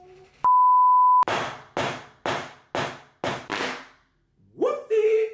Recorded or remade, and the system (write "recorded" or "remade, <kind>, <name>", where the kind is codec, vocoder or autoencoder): recorded